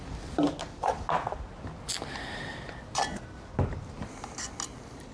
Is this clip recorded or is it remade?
recorded